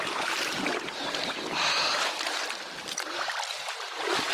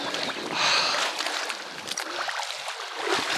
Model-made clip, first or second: first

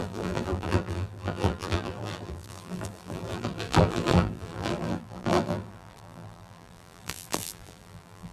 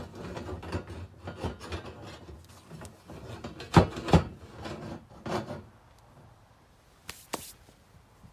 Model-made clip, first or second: first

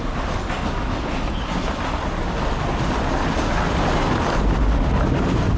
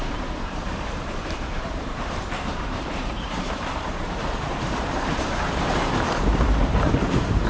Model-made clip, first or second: second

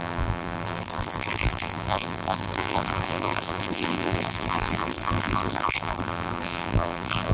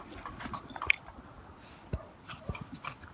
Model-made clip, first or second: first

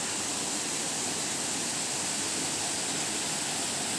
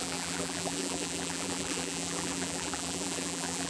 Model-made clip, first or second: second